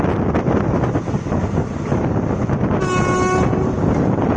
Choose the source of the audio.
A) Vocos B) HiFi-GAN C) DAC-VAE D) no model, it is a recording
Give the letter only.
D